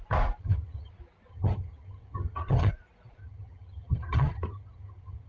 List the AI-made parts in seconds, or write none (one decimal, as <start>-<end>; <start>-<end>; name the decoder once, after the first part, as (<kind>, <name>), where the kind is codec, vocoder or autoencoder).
0.4-0.9 (vocoder, HiFi-GAN); 1.3-2.7; 3.2-5.3